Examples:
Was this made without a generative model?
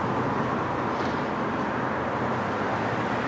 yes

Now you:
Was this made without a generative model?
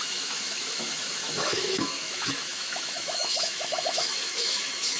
no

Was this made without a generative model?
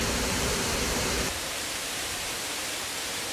no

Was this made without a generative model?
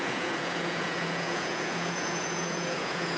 no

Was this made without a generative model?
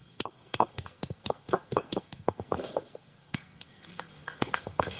no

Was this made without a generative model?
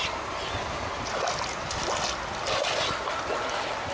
yes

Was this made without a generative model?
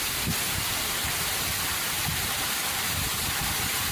yes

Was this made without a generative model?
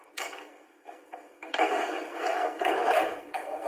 no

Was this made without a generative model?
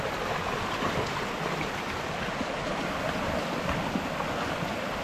yes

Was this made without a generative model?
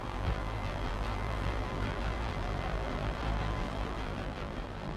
no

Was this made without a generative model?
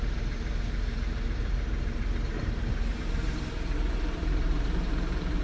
no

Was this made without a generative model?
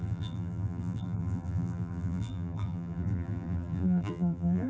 no